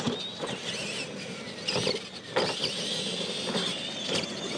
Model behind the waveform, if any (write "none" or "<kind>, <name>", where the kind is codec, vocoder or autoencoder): none